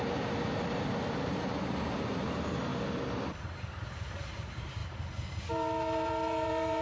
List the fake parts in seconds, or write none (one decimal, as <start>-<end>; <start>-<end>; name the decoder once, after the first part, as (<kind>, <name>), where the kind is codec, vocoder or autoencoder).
0.0-2.7 (vocoder, BigVGAN v2); 3.3-4.8; 5.5-6.8